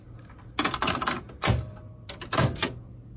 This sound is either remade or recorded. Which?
recorded